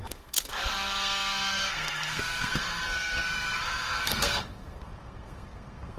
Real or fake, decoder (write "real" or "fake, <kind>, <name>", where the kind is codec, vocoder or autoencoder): fake, codec, SNAC